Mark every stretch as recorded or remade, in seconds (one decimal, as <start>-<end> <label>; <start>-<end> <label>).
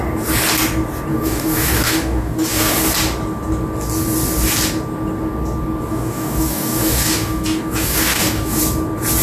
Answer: 0.0-1.1 recorded; 1.1-2.7 remade; 2.7-5.9 recorded; 5.9-8.6 remade; 8.6-9.2 recorded